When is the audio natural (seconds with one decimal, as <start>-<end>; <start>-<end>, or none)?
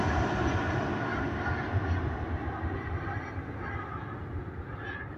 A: 0.0-5.2